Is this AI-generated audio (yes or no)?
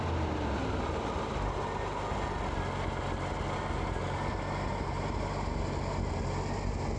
no